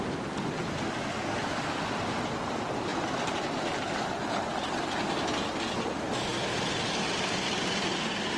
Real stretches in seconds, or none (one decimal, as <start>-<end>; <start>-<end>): 0.0-1.4; 1.9-2.9; 4.3-8.4